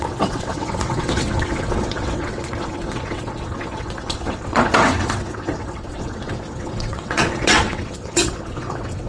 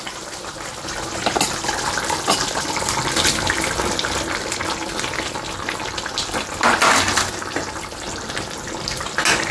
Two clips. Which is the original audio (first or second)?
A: second